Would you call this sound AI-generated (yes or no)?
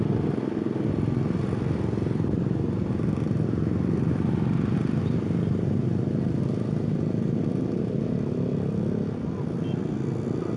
no